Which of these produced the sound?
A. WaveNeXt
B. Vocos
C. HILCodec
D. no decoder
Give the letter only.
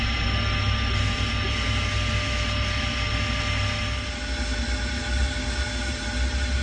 D